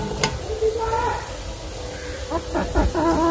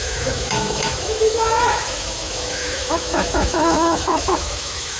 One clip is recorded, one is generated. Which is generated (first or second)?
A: second